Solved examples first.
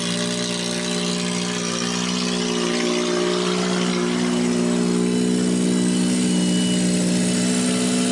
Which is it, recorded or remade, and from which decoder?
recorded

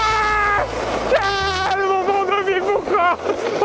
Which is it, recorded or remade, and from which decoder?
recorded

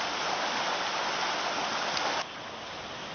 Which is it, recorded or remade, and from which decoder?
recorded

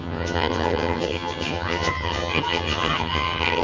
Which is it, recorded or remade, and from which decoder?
remade, vocoder, HiFi-GAN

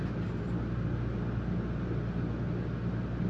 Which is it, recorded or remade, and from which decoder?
recorded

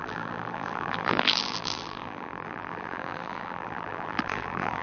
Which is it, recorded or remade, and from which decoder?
remade, vocoder, BigVGAN v2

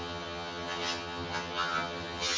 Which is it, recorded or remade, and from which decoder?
remade, vocoder, HiFi-GAN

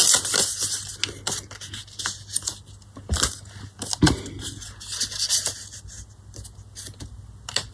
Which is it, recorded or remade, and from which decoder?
recorded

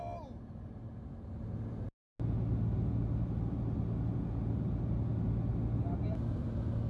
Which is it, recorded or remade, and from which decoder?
recorded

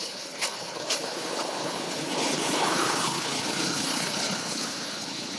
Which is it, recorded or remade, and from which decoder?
remade, codec, HILCodec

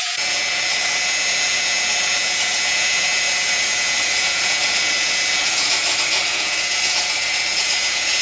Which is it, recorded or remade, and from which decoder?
remade, vocoder, Vocos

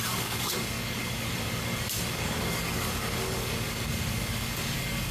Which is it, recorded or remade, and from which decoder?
remade, codec, DAC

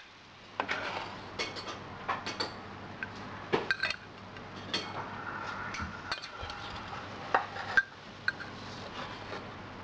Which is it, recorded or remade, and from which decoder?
recorded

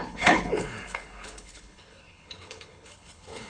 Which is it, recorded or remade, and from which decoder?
remade, codec, HILCodec